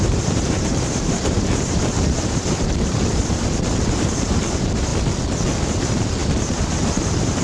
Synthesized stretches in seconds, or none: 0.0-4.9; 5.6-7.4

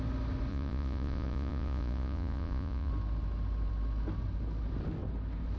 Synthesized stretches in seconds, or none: 0.5-2.9